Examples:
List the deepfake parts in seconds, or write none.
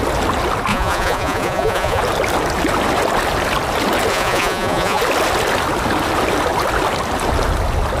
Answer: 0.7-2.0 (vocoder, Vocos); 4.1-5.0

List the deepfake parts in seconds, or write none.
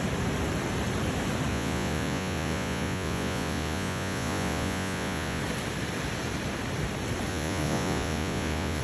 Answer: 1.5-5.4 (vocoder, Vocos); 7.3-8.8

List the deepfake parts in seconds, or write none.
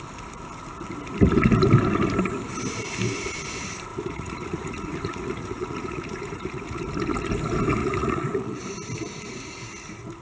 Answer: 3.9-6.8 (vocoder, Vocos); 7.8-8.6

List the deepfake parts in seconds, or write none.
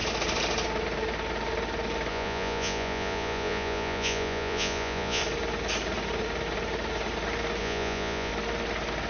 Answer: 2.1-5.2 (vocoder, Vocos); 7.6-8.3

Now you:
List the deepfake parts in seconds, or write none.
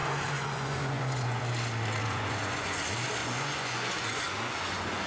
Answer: 0.0-1.4 (vocoder, Vocos); 2.0-2.8; 3.2-5.1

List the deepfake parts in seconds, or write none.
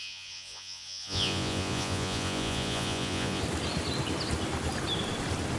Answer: 0.0-3.4 (vocoder, Vocos)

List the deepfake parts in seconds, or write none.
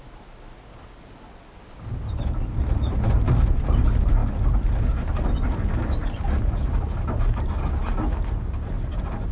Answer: none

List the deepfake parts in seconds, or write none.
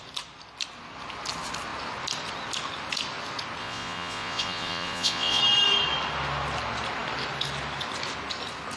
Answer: 3.6-5.4 (vocoder, Vocos)